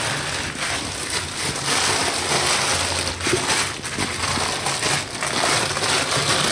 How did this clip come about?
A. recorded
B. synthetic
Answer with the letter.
A